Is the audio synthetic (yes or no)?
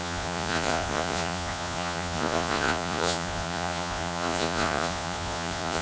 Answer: yes